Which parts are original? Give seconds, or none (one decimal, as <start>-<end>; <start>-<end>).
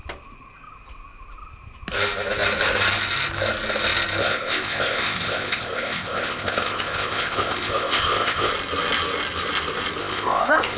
0.0-4.2; 8.5-10.0